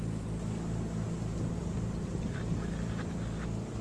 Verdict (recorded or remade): recorded